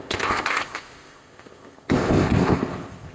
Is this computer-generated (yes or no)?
yes